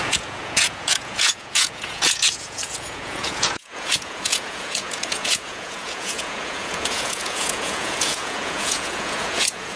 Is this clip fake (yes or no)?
yes